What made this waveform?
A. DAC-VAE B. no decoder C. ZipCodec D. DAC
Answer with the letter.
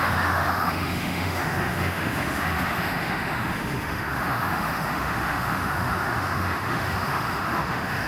A